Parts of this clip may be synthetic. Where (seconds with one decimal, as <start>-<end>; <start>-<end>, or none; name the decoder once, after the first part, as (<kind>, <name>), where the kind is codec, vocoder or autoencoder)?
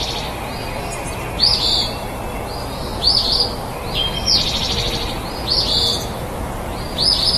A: none